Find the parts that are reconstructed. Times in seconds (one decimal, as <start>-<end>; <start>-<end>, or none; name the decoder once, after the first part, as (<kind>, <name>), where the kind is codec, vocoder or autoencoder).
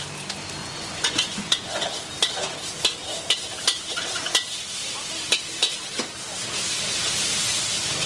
0.6-1.9 (vocoder, Vocos)